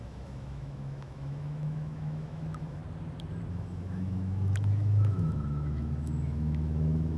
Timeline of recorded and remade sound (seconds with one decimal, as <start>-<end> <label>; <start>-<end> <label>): 0.0-2.8 remade; 2.8-3.5 recorded; 3.5-7.2 remade